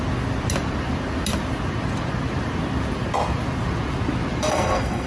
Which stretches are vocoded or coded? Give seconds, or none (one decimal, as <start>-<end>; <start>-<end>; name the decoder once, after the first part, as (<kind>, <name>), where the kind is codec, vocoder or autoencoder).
4.4-5.1 (codec, SNAC)